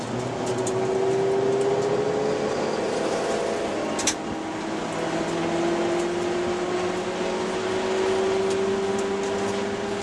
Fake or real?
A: real